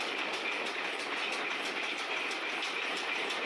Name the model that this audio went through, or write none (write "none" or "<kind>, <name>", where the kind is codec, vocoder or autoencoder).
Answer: none